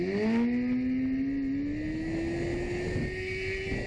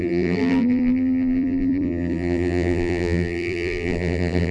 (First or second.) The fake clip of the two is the second